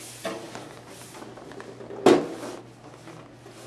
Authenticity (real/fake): real